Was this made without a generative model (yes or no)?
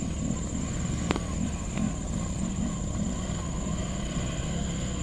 yes